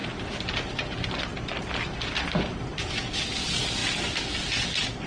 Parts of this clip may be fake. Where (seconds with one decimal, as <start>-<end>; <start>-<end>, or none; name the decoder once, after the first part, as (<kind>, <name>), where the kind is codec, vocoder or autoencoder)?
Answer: none